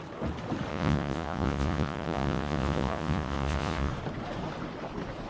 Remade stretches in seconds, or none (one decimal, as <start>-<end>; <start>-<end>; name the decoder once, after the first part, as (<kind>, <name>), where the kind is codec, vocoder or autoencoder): 0.7-3.9 (vocoder, Vocos)